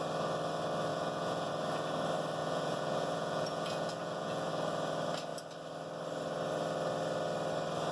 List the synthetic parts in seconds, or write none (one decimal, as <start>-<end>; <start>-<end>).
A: 0.9-1.5; 2.4-4.5